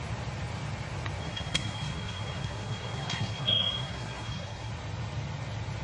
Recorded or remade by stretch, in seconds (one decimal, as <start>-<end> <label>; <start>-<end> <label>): 0.0-1.2 recorded; 1.2-4.7 remade; 4.7-5.8 recorded